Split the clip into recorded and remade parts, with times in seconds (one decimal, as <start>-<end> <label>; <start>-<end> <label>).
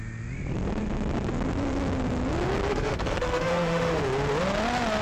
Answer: 0.0-2.7 recorded; 2.7-4.0 remade; 4.0-5.0 recorded